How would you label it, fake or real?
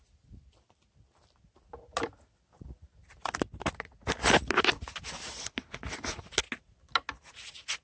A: real